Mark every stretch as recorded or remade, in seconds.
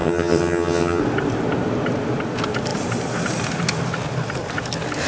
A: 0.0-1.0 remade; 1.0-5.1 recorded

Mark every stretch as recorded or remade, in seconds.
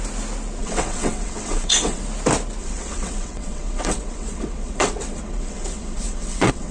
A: 0.0-0.6 recorded; 0.6-2.0 remade; 2.0-2.6 recorded; 2.6-6.7 remade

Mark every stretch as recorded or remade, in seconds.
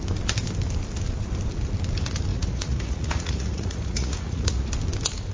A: 0.0-2.3 recorded; 2.3-4.7 remade; 4.7-5.3 recorded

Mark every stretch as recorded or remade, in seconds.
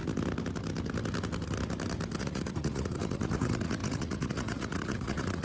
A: 0.0-2.2 recorded; 2.2-5.4 remade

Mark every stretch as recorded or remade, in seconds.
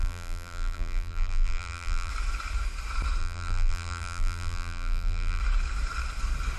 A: 0.0-2.1 remade; 2.1-3.2 recorded; 3.2-5.4 remade; 5.4-6.6 recorded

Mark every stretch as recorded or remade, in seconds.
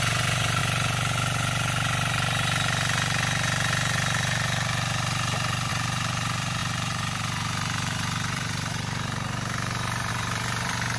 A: 0.0-0.6 remade; 0.6-5.7 recorded; 5.7-11.0 remade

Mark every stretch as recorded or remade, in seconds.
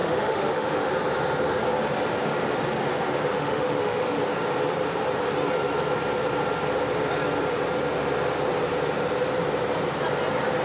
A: 0.0-0.9 remade; 0.9-3.3 recorded; 3.3-4.2 remade; 4.2-10.6 recorded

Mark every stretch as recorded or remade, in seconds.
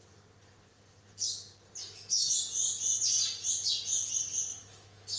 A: 0.0-1.8 recorded; 1.8-2.4 remade; 2.4-4.5 recorded; 4.5-5.2 remade